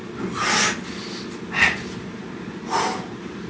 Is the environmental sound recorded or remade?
recorded